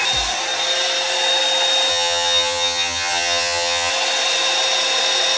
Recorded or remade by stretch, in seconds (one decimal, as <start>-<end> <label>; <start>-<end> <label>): 0.0-1.9 recorded; 1.9-3.9 remade; 3.9-5.4 recorded